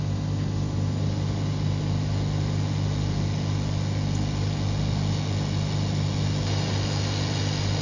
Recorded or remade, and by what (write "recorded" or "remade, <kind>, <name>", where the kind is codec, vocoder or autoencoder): recorded